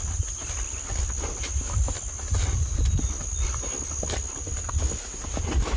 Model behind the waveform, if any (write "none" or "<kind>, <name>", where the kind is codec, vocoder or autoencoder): none